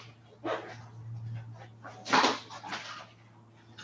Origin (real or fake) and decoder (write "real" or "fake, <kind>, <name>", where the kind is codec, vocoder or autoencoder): real